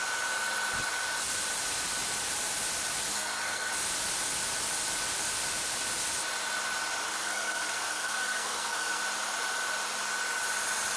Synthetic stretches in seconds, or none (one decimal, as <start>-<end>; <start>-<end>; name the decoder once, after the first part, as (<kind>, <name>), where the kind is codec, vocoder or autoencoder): 3.1-3.7 (codec, SNAC); 7.1-9.0